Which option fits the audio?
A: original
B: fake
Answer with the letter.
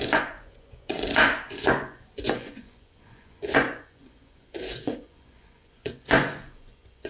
B